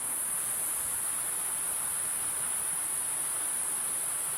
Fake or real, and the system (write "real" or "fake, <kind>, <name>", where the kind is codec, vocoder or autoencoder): real